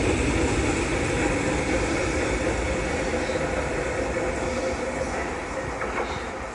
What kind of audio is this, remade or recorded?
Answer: recorded